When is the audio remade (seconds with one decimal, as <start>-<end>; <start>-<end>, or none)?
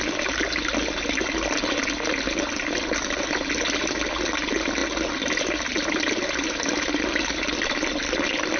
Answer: none